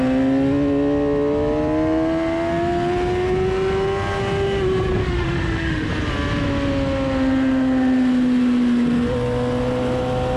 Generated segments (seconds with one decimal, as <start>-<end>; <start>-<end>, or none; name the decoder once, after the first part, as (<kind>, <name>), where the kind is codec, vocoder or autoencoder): 5.0-5.9 (autoencoder, DAC-VAE)